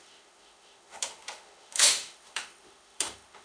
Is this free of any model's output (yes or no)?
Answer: no